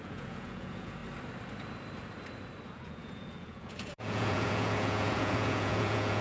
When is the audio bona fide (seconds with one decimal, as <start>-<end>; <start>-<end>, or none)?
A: 1.0-2.7